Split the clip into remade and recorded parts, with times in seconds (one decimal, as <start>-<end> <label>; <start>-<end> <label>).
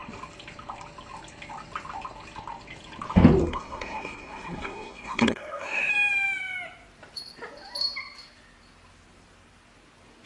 0.0-3.4 recorded; 3.4-5.9 remade; 5.9-10.3 recorded